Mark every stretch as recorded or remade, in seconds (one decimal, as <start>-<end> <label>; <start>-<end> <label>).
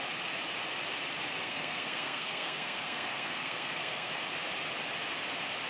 0.0-1.4 recorded; 1.4-4.1 remade; 4.1-5.7 recorded